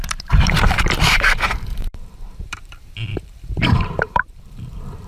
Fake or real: fake